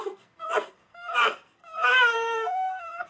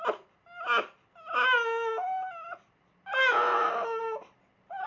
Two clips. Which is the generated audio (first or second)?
first